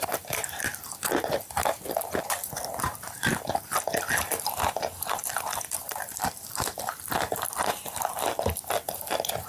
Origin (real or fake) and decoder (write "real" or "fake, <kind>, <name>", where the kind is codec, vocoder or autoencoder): fake, vocoder, BigVGAN v2